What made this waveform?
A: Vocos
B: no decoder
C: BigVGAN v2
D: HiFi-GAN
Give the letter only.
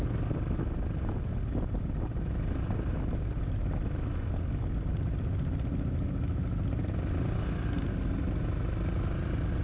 B